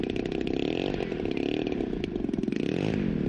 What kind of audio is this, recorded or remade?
recorded